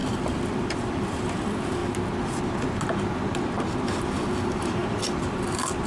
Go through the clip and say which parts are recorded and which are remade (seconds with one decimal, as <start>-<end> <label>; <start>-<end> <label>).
0.0-1.8 remade; 1.8-3.8 recorded; 3.8-5.9 remade